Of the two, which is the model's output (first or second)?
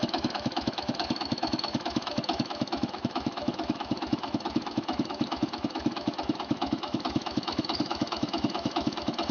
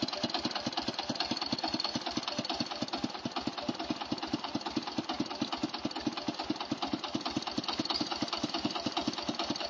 first